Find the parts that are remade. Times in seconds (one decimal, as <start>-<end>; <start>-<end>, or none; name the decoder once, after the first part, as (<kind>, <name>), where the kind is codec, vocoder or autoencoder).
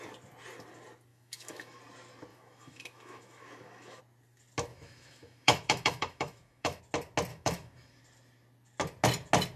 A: 1.1-1.8 (autoencoder, DAC-VAE); 2.3-4.0; 4.7-6.8; 7.3-8.0